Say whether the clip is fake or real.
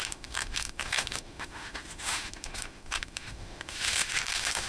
fake